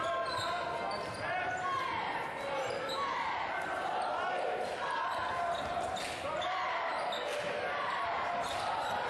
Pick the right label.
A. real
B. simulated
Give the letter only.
A